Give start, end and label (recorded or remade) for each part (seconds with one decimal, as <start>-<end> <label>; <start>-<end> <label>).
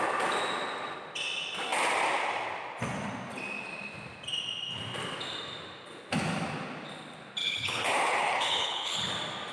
0.0-7.4 recorded; 7.4-9.1 remade; 9.1-9.5 recorded